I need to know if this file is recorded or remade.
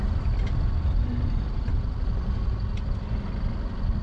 recorded